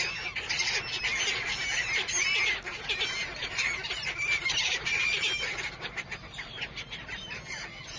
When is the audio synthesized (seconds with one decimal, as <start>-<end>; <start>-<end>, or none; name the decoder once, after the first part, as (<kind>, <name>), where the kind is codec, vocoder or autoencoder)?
none